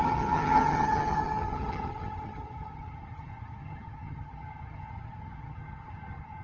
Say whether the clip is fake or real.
fake